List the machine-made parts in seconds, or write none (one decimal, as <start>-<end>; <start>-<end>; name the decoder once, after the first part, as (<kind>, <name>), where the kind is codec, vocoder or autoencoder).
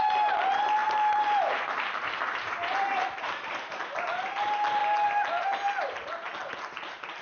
0.8-3.8 (vocoder, BigVGAN v2)